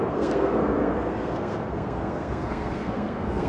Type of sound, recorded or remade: remade